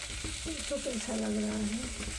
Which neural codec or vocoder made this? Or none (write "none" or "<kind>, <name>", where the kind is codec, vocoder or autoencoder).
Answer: none